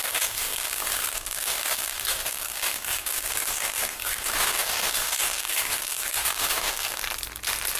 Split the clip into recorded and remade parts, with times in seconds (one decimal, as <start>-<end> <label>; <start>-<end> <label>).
0.0-7.0 remade; 7.0-7.8 recorded